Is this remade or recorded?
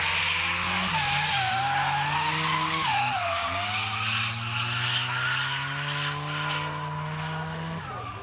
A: recorded